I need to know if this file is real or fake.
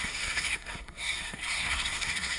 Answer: fake